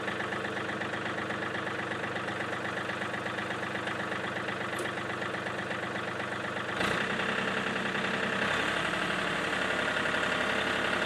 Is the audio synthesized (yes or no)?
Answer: no